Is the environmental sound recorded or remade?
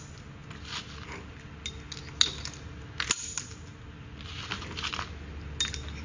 recorded